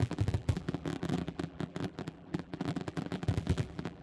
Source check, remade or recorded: remade